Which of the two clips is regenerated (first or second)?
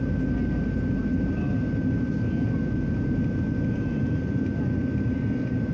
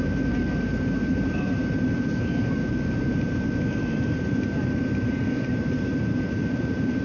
second